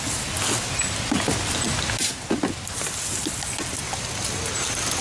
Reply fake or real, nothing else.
real